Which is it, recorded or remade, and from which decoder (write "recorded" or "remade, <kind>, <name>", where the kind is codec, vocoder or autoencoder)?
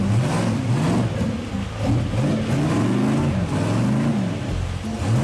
recorded